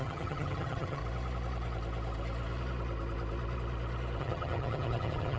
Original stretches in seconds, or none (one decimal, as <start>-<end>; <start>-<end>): 1.0-4.2